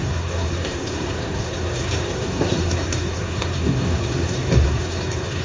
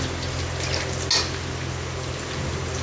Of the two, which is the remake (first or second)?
first